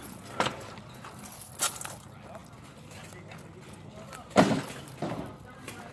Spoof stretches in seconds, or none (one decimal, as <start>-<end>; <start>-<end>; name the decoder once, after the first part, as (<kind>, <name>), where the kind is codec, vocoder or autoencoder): none